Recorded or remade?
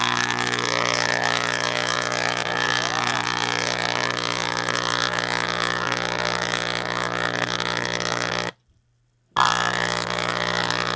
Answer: recorded